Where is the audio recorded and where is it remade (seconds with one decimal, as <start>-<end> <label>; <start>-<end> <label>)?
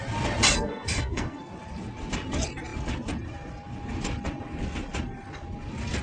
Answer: 0.0-0.5 recorded; 0.5-1.5 remade; 1.5-6.0 recorded